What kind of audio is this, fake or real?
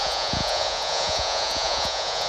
fake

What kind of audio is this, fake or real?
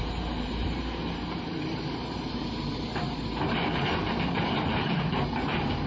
fake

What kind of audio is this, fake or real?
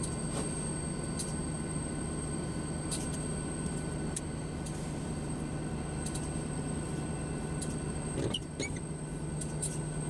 real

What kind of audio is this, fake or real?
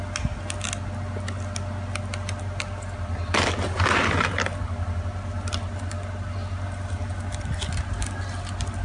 real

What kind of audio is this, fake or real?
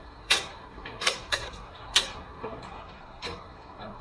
fake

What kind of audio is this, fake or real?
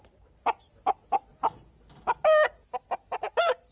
real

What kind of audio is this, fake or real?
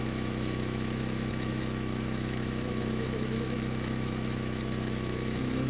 fake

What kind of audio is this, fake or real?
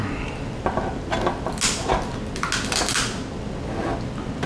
real